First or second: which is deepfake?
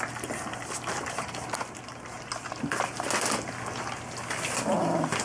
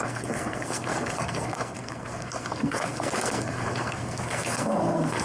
second